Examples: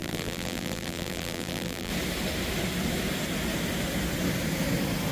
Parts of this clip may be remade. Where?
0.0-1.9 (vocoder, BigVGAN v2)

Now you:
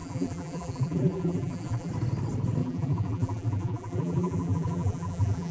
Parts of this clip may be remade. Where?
0.0-1.9 (vocoder, BigVGAN v2); 2.6-5.5

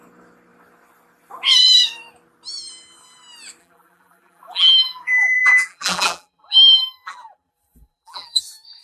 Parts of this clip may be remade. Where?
3.6-8.4 (vocoder, BigVGAN v2)

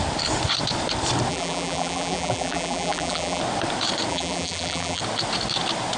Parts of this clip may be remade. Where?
1.3-3.4 (vocoder, BigVGAN v2); 4.1-5.0

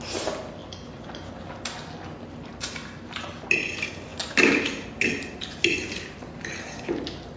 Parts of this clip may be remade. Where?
2.5-3.6 (vocoder, BigVGAN v2); 4.1-6.8

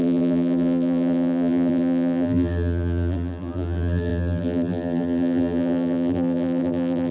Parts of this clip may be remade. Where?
0.0-7.1 (vocoder, BigVGAN v2)